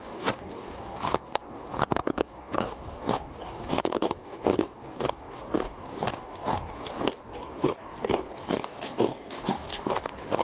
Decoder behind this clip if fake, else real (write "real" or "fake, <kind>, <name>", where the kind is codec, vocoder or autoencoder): fake, codec, DAC